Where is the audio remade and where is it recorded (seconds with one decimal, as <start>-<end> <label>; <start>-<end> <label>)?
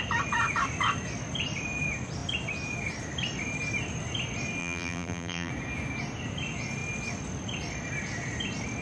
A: 0.0-4.6 recorded; 4.6-5.5 remade; 5.5-8.8 recorded